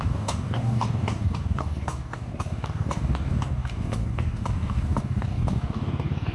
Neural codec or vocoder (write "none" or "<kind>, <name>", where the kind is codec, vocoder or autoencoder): codec, DAC